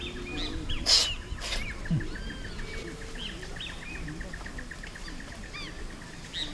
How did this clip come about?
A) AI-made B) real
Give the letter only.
B